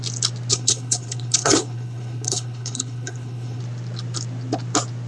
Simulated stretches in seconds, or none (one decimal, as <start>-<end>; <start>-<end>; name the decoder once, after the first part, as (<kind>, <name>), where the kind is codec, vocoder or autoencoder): 0.5-3.6 (codec, HILCodec)